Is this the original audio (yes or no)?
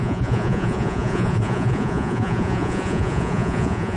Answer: no